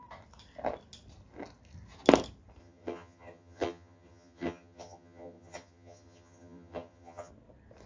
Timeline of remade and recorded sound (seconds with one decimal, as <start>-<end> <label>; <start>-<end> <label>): 0.0-2.6 recorded; 2.6-7.3 remade; 7.3-7.9 recorded